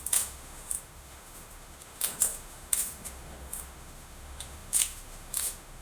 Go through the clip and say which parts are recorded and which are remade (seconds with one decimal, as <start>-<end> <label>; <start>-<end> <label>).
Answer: 0.0-5.8 remade